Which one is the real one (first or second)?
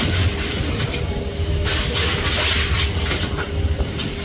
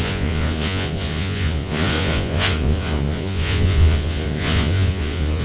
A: first